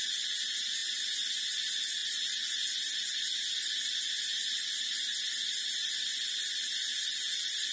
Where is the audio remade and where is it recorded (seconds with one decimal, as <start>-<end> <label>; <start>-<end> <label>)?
0.0-7.7 recorded